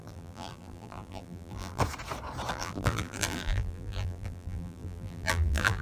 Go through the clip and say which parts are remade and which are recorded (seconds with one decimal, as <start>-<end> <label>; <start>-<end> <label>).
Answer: 0.0-1.8 remade; 1.8-2.5 recorded; 2.5-5.8 remade